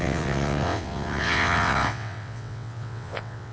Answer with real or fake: fake